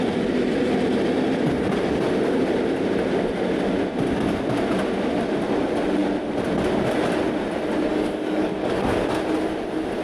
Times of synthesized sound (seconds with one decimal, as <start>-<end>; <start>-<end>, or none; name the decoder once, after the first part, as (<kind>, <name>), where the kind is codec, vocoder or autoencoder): 7.9-8.8 (codec, DAC)